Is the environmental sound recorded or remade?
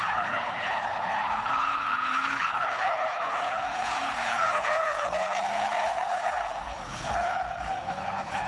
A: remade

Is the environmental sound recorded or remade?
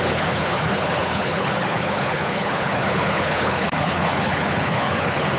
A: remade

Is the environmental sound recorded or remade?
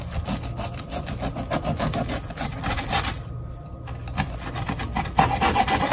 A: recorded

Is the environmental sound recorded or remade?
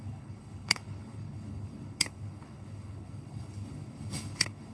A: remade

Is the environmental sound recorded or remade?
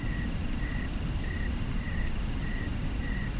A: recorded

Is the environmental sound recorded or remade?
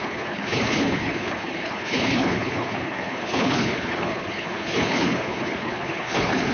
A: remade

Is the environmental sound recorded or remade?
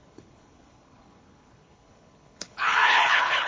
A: remade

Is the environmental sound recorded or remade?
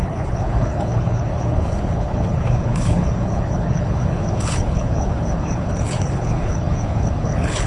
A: remade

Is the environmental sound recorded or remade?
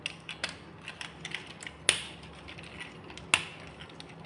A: recorded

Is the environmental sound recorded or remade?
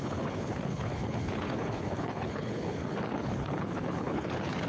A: remade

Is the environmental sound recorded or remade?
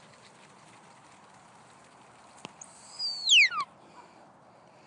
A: recorded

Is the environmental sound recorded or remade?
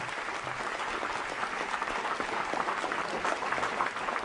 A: recorded